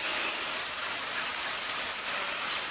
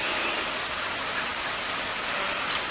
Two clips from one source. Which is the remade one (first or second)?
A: first